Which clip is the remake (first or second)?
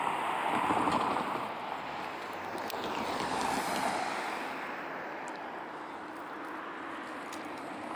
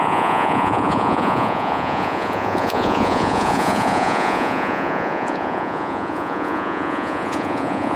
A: second